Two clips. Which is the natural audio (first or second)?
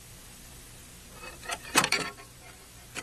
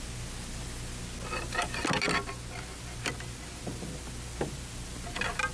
second